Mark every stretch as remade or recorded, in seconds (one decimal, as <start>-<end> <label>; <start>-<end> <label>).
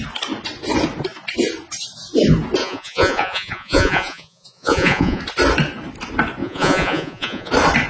0.0-2.6 recorded; 2.6-5.2 remade; 5.2-6.4 recorded; 6.4-7.5 remade; 7.5-7.9 recorded